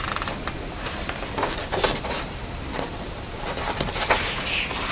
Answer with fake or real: real